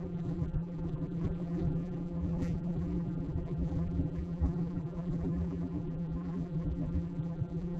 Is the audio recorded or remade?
remade